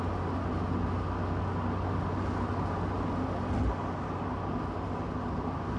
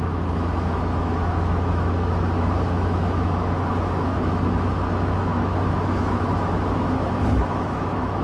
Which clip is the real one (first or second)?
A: first